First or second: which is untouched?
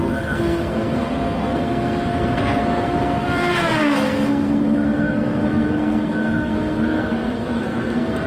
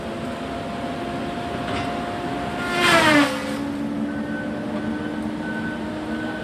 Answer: second